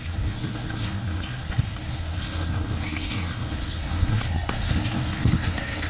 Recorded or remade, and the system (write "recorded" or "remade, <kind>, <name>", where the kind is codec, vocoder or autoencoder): remade, codec, SNAC